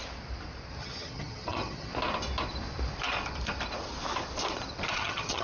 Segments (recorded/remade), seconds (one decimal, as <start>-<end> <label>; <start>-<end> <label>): 0.0-0.8 recorded; 0.8-1.9 remade; 1.9-4.9 recorded; 4.9-5.4 remade